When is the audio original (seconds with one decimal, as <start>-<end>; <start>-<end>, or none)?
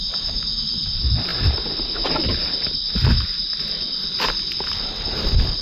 0.0-5.6